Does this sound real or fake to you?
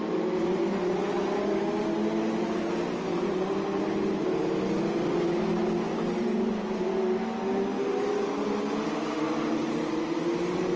real